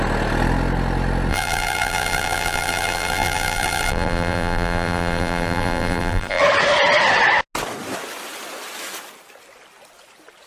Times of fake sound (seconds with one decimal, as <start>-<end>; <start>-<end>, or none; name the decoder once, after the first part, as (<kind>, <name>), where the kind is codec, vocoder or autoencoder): 1.3-6.4 (vocoder, BigVGAN v2)